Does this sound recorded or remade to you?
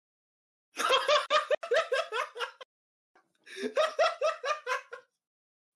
recorded